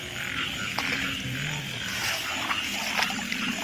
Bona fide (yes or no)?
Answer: yes